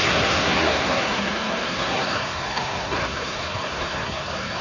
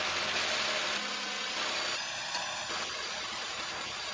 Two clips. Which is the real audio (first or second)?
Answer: second